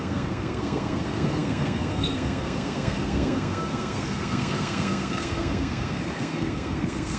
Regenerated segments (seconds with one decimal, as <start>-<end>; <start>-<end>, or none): 0.0-7.2